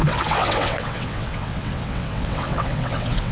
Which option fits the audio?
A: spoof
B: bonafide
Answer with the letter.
A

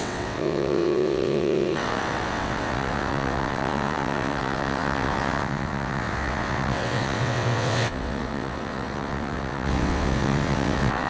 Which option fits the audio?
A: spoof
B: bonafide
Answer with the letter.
A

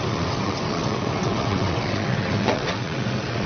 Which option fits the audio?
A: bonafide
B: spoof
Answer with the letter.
B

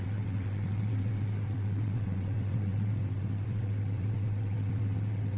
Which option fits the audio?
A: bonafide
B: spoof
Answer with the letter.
B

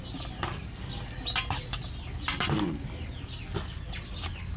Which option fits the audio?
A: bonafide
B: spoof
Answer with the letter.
A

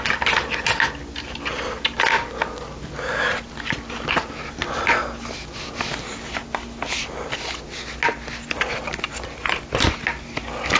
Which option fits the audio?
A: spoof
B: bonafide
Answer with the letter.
B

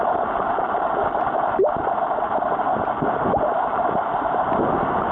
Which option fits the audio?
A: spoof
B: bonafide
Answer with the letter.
B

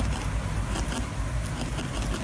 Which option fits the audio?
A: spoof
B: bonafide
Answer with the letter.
B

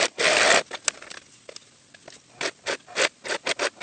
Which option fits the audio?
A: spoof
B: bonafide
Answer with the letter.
B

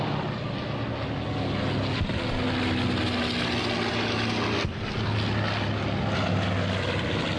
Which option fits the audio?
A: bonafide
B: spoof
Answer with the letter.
A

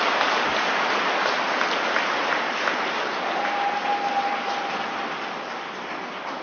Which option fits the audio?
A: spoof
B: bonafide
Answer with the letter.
B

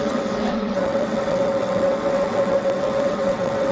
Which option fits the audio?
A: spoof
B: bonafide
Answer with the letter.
A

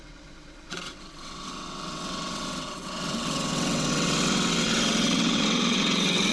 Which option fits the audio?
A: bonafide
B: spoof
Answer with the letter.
B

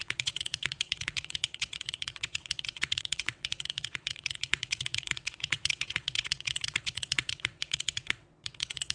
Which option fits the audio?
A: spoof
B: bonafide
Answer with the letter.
A